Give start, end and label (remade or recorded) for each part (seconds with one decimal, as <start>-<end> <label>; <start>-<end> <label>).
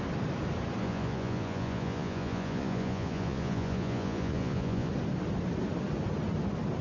0.0-0.8 recorded; 0.8-4.9 remade; 4.9-6.8 recorded